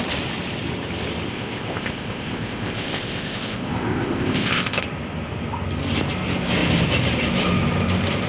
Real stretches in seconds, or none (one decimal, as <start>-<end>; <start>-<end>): 0.0-1.3; 4.8-8.3